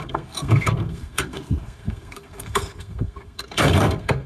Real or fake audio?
fake